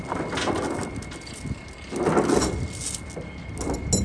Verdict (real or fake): real